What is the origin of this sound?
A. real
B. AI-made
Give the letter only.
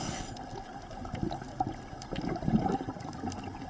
A